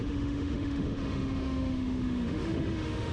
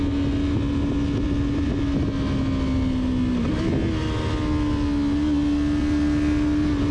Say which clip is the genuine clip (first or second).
second